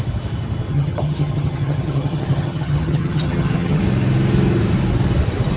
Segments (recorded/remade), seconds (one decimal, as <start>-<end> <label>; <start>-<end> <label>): 0.0-0.7 recorded; 0.7-3.8 remade; 3.8-5.6 recorded